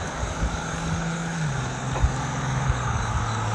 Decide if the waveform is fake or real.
fake